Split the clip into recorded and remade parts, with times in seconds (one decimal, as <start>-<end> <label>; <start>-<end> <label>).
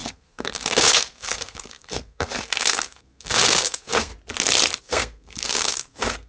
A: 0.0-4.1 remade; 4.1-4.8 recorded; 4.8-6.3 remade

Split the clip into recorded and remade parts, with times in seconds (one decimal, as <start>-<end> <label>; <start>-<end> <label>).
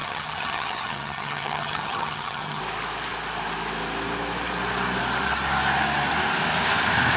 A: 0.0-2.6 remade; 2.6-7.2 recorded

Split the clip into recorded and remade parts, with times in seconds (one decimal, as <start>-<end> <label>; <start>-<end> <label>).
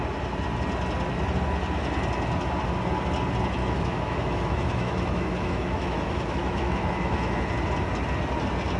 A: 0.0-3.6 recorded; 3.6-7.5 remade; 7.5-8.8 recorded